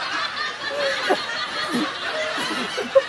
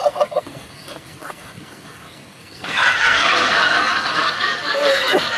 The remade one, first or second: second